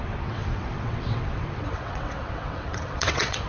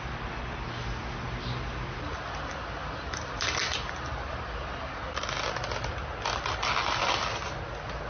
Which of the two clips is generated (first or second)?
first